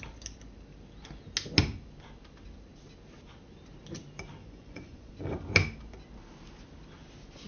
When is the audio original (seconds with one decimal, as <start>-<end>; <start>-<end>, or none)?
0.0-4.4; 5.1-7.5